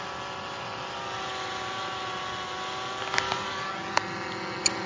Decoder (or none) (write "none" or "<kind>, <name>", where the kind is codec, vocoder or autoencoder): none